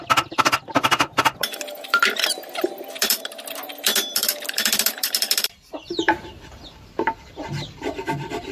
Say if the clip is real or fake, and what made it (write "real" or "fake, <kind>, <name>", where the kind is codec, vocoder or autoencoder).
fake, vocoder, BigVGAN v2